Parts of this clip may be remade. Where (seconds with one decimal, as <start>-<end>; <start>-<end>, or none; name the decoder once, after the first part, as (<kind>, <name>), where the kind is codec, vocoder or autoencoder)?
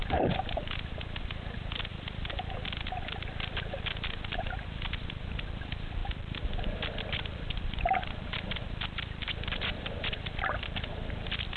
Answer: 0.0-1.9 (vocoder, BigVGAN v2); 4.5-6.0; 6.5-11.6